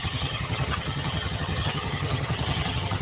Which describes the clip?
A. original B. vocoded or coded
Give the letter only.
B